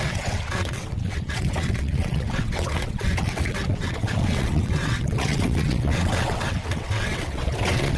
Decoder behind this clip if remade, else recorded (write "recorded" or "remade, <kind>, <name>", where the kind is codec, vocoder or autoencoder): remade, vocoder, WaveNeXt